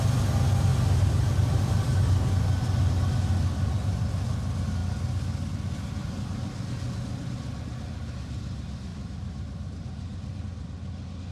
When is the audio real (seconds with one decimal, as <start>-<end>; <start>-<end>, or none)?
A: 0.0-8.9; 10.4-11.3